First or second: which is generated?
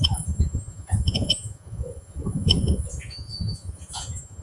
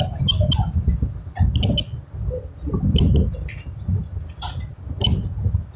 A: first